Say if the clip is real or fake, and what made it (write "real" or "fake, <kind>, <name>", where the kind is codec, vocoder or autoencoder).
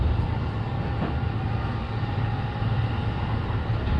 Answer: real